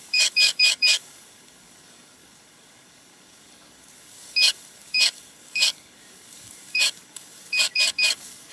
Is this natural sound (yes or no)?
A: no